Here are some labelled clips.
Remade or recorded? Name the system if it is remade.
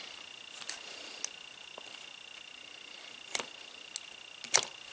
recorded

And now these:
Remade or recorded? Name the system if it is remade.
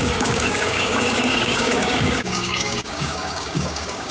remade, codec, DAC